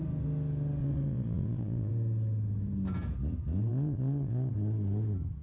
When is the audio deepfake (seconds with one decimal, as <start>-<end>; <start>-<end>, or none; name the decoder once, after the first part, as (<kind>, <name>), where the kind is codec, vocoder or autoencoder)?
0.8-1.9 (vocoder, Vocos); 3.7-4.5